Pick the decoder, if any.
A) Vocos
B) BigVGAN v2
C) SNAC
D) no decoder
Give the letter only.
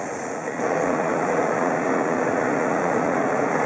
A